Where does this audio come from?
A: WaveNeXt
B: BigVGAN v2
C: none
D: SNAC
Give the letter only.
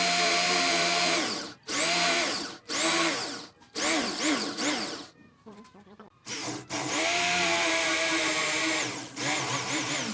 B